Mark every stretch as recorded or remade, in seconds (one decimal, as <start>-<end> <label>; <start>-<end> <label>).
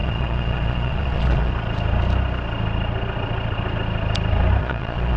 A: 0.0-1.5 remade; 1.5-4.6 recorded; 4.6-5.2 remade